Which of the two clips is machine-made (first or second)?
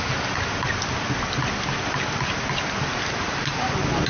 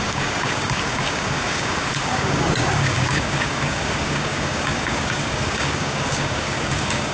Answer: second